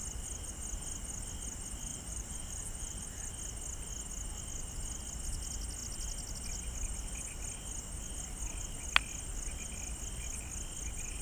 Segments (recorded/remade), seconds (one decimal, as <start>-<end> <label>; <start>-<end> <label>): 0.0-1.9 recorded; 1.9-3.3 remade; 3.3-11.2 recorded